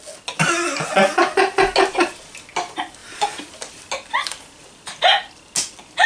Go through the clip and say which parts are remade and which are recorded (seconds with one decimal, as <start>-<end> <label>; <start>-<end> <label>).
0.0-3.0 recorded; 3.0-3.8 remade; 3.8-6.1 recorded